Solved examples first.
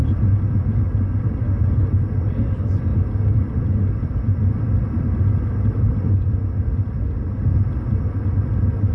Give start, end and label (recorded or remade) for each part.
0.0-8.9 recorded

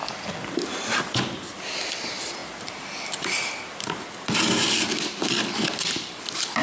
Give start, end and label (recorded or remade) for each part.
0.0-6.6 recorded

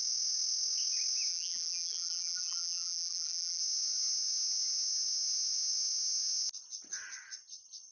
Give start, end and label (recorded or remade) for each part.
0.0-1.3 recorded; 1.3-3.6 remade; 3.6-7.9 recorded

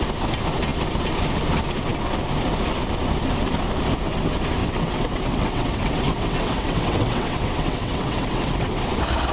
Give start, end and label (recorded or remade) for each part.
0.0-4.6 recorded; 4.6-8.9 remade; 8.9-9.3 recorded

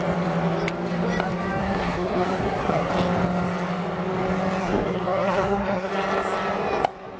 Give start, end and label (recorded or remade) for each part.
0.0-1.6 recorded; 1.6-2.9 remade; 2.9-4.6 recorded; 4.6-5.9 remade; 5.9-7.2 recorded